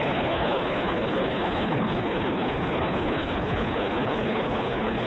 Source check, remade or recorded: remade